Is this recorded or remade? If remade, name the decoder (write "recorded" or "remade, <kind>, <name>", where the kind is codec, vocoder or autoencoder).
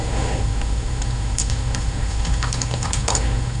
remade, codec, SNAC